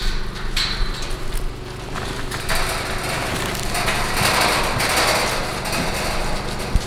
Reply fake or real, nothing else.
real